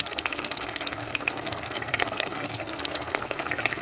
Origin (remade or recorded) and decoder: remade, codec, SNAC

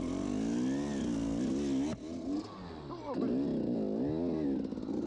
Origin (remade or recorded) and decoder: recorded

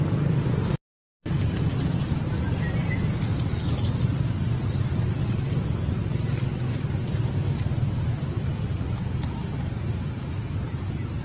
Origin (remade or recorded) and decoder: recorded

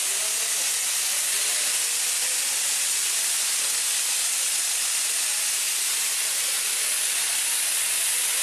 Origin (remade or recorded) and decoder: recorded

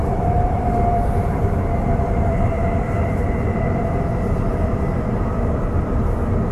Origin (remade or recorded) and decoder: remade, vocoder, BigVGAN v2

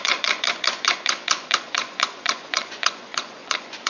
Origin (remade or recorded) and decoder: remade, vocoder, Vocos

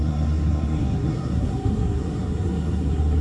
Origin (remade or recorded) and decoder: remade, codec, SNAC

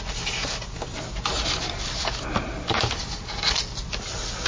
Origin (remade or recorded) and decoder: recorded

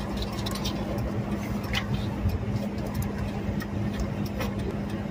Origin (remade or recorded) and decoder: recorded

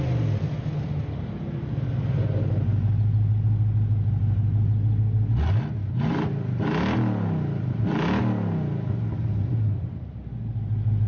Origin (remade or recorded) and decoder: recorded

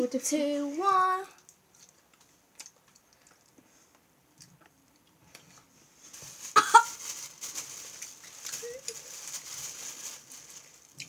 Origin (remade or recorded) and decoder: recorded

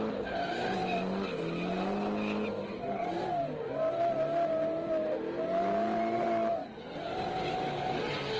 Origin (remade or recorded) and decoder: recorded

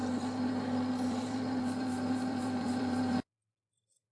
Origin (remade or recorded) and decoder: remade, vocoder, BigVGAN v2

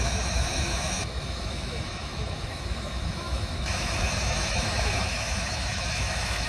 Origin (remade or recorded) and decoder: remade, autoencoder, DAC-VAE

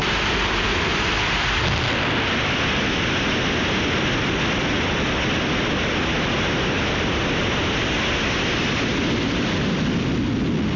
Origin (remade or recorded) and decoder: recorded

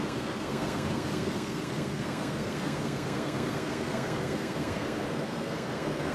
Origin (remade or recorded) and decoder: remade, codec, SNAC